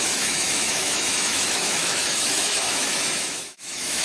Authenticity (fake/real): fake